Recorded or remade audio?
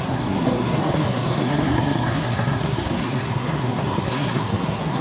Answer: remade